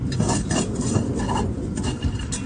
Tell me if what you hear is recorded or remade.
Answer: recorded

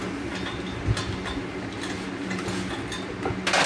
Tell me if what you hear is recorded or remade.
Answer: recorded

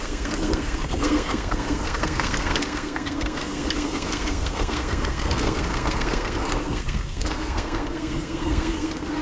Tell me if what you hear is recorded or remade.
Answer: remade